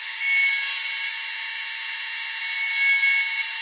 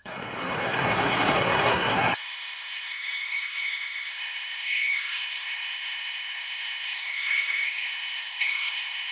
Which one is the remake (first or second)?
second